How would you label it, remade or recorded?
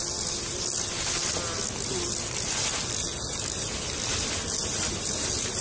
recorded